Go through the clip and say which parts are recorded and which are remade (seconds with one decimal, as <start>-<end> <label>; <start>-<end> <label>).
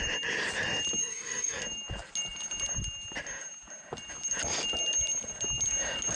0.0-1.0 recorded; 1.0-1.6 remade; 1.6-6.2 recorded